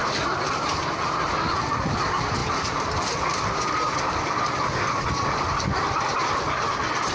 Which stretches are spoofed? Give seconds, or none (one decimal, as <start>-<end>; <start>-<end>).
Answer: none